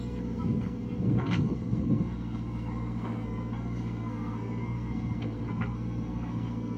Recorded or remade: remade